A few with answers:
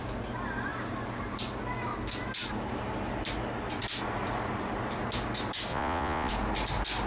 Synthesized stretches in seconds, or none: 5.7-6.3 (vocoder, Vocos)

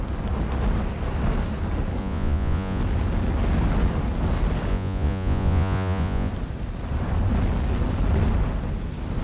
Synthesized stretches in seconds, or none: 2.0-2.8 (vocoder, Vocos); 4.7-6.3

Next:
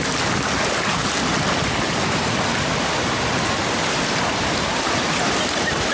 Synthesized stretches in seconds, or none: none